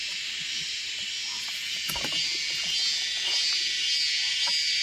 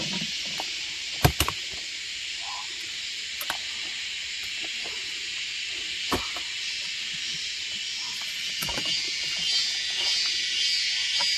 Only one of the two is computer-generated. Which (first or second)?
second